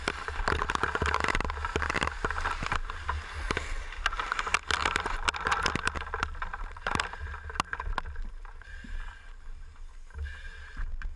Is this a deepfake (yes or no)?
no